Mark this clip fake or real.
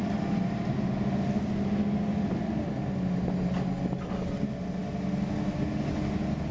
real